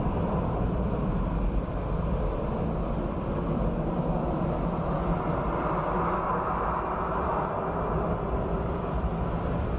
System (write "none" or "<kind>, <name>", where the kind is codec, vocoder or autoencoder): none